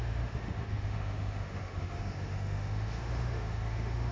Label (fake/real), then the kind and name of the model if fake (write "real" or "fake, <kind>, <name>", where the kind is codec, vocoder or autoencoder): fake, autoencoder, DAC-VAE